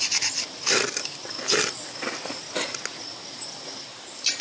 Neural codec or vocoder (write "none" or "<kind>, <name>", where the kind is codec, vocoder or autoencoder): none